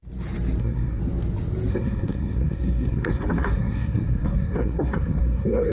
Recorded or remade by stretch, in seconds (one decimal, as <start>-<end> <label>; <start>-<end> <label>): 0.0-0.6 recorded; 0.6-1.0 remade; 1.0-1.7 recorded; 1.7-5.7 remade